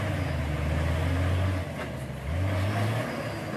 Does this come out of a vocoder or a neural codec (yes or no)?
no